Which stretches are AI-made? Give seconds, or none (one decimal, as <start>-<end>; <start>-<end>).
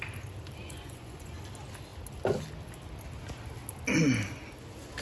0.6-1.4